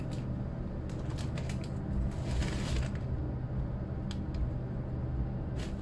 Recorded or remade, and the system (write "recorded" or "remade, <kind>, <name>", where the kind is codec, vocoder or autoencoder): recorded